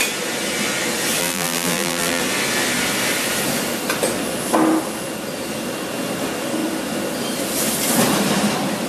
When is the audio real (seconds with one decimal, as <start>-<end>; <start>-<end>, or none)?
0.0-1.2; 2.2-8.9